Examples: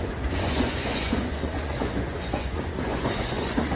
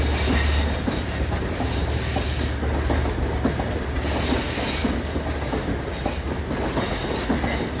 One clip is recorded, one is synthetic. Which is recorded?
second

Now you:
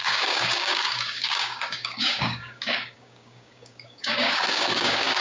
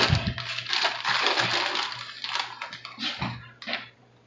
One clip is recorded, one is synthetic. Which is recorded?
second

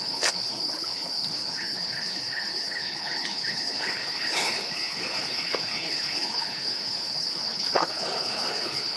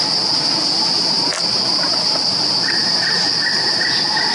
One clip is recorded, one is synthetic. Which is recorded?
second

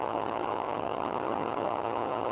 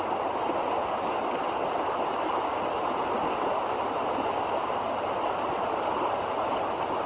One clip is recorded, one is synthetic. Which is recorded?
second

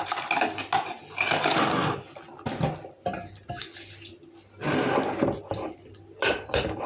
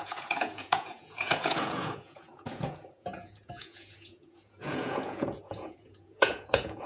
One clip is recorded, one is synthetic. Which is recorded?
first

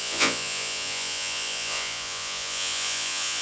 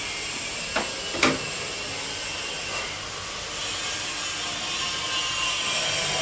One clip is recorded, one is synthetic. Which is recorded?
second